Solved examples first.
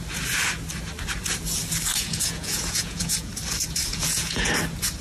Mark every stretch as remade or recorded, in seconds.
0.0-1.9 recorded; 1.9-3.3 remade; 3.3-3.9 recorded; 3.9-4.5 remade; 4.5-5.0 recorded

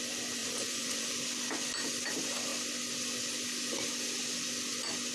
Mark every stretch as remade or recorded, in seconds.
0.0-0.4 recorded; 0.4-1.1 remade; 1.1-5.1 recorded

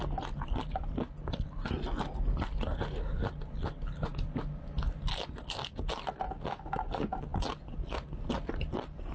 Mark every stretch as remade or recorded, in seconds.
0.0-9.1 recorded

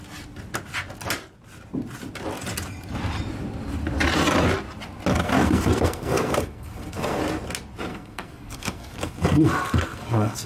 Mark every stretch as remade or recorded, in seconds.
0.0-5.1 recorded; 5.1-7.2 remade; 7.2-7.9 recorded; 7.9-10.5 remade

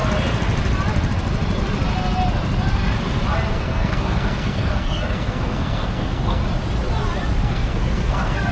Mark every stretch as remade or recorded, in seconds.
0.0-3.5 recorded; 3.5-6.4 remade; 6.4-7.4 recorded; 7.4-8.5 remade

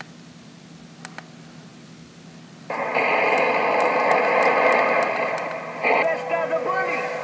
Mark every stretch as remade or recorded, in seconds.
0.0-7.2 recorded